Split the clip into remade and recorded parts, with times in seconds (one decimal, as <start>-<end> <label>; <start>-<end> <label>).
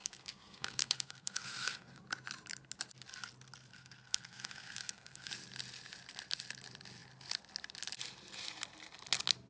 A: 0.0-2.0 remade; 2.0-3.7 recorded; 3.7-5.3 remade; 5.3-9.5 recorded